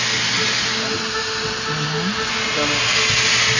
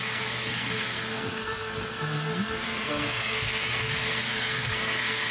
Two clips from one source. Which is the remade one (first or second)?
second